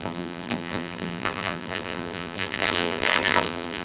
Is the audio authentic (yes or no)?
no